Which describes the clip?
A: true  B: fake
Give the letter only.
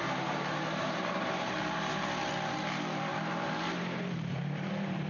B